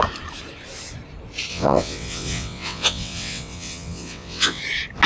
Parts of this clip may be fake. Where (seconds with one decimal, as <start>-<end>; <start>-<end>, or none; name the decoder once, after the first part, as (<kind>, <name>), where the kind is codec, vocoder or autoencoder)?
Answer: 1.5-4.6 (vocoder, WaveNeXt)